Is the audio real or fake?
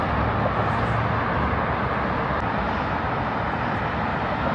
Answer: real